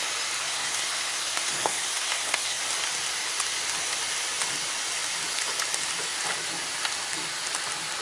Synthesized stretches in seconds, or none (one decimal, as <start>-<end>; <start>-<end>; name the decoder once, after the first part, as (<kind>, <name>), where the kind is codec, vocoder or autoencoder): 0.4-2.6 (codec, SNAC)